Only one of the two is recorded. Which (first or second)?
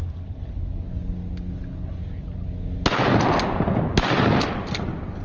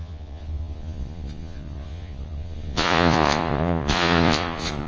first